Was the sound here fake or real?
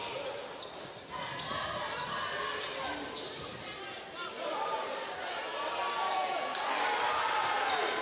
real